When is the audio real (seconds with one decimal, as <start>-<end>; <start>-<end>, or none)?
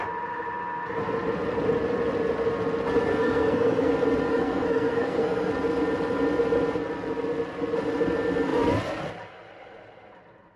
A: 0.0-3.2; 3.9-4.3; 5.5-10.6